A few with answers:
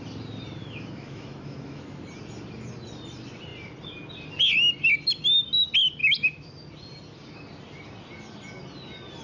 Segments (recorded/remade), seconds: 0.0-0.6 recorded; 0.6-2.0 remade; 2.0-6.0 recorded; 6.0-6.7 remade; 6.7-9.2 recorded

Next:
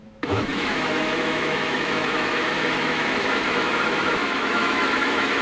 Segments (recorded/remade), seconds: 0.0-5.4 remade

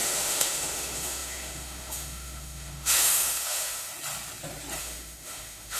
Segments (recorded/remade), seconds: 0.0-3.9 remade; 3.9-4.8 recorded; 4.8-5.8 remade

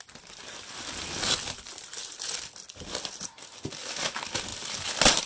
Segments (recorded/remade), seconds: 0.0-5.3 recorded

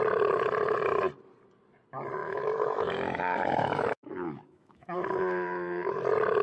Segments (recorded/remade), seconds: 0.0-2.2 recorded; 2.2-6.0 remade; 6.0-6.4 recorded

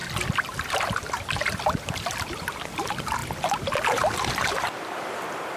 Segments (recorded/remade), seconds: 0.0-5.6 recorded

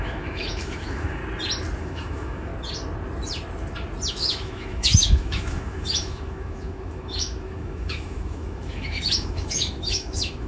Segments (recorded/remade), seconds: 0.0-1.2 remade; 1.2-1.8 recorded; 1.8-2.5 remade; 2.5-4.1 recorded; 4.1-10.5 remade